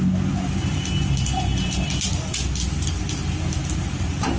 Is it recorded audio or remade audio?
recorded